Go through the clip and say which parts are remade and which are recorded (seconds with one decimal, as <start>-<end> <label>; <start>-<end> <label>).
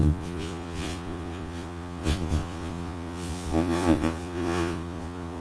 0.0-5.4 remade